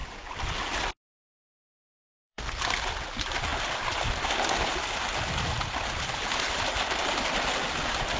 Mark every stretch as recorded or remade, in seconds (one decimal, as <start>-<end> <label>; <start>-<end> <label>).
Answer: 0.0-1.8 recorded; 1.8-2.5 remade; 2.5-8.2 recorded